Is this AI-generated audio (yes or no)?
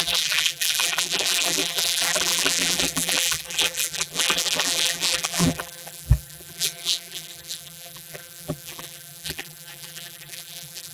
yes